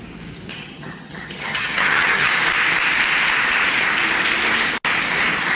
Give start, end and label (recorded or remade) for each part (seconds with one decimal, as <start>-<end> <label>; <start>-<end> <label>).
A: 0.0-0.5 recorded; 0.5-2.3 remade; 2.3-5.6 recorded